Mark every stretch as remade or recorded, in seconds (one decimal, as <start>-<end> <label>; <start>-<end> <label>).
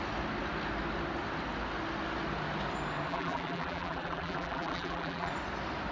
0.0-3.1 recorded; 3.1-5.3 remade; 5.3-5.9 recorded